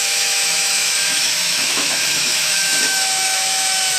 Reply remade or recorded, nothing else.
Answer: remade